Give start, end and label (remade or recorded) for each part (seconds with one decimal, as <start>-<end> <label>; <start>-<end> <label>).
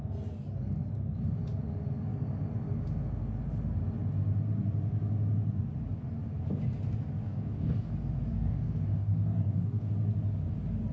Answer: 0.0-7.2 recorded; 7.2-7.9 remade; 7.9-8.3 recorded; 8.3-9.9 remade; 9.9-10.9 recorded